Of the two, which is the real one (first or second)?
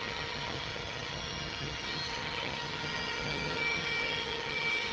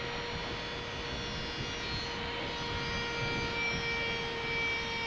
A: second